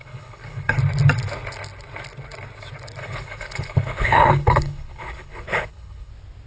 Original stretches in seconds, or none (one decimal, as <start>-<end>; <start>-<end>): 0.8-3.0; 6.1-6.5